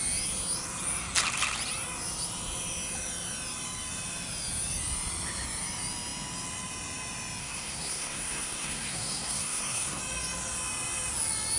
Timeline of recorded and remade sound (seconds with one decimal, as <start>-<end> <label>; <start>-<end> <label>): 0.0-7.4 recorded; 7.4-10.0 remade; 10.0-11.6 recorded

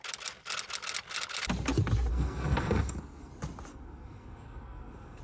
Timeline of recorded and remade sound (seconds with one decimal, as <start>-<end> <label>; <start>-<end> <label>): 0.0-2.1 recorded; 2.1-3.3 remade; 3.3-3.7 recorded; 3.7-5.2 remade

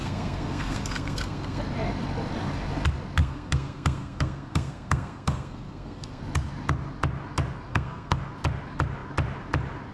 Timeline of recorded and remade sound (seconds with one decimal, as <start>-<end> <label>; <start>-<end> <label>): 0.0-1.6 remade; 1.6-3.2 recorded; 3.2-6.2 remade; 6.2-7.7 recorded; 7.7-8.2 remade; 8.2-9.9 recorded

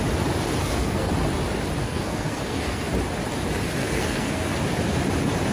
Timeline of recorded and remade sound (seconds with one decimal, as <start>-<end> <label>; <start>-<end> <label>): 0.0-0.6 recorded; 0.6-1.1 remade; 1.1-1.8 recorded; 1.8-2.9 remade; 2.9-3.8 recorded; 3.8-4.5 remade; 4.5-5.5 recorded

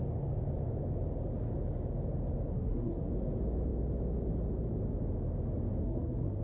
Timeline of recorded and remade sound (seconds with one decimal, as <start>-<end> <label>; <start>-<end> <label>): 0.0-2.5 recorded; 2.5-3.1 remade; 3.1-5.8 recorded; 5.8-6.4 remade

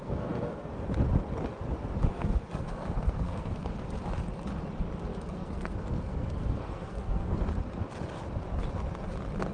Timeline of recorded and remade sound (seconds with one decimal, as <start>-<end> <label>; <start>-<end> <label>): 0.0-0.7 remade; 0.7-2.1 recorded; 2.1-3.9 remade; 3.9-5.1 recorded; 5.1-7.5 remade; 7.5-9.5 recorded

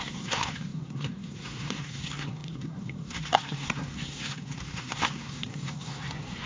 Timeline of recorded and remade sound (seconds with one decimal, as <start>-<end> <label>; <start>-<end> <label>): 0.0-6.5 remade

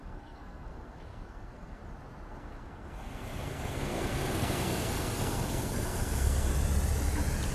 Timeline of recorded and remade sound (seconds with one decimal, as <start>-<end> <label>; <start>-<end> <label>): 0.0-1.8 remade; 1.8-2.3 recorded; 2.3-6.5 remade; 6.5-7.5 recorded